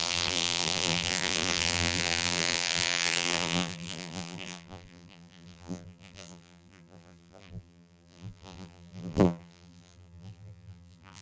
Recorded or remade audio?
remade